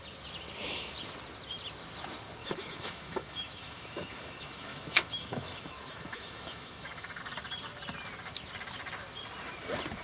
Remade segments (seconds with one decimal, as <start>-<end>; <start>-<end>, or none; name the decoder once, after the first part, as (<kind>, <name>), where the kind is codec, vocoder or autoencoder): 2.4-7.2 (autoencoder, DAC-VAE)